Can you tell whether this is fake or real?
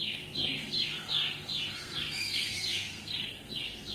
fake